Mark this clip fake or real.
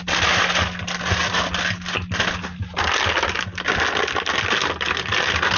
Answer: real